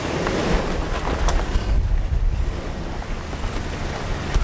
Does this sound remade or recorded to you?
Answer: recorded